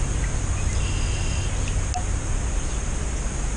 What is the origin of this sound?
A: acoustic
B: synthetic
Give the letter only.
A